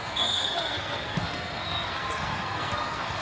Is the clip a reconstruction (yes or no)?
yes